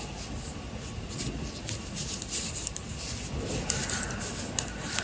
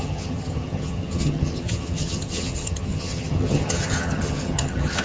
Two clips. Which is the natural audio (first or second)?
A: first